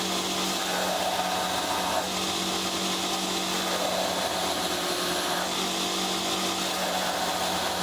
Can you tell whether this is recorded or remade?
recorded